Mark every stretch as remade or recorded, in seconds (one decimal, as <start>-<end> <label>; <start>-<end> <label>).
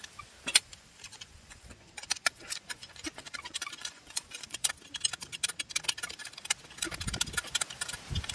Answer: 0.0-0.5 recorded; 0.5-4.7 remade; 4.7-8.3 recorded